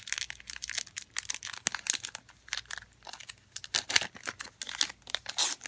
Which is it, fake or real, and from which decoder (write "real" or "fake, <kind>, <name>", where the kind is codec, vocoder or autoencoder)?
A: real